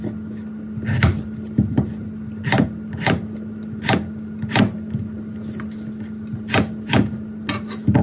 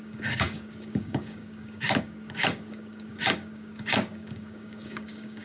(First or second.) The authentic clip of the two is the first